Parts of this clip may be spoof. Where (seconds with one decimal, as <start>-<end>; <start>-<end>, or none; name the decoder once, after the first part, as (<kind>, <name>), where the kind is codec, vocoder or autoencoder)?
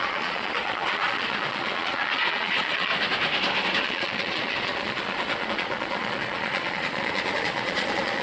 0.0-2.9 (vocoder, Vocos); 3.8-8.2